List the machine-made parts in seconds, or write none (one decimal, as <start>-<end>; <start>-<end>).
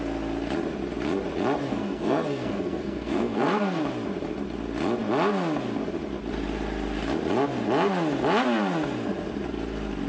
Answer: 1.6-3.8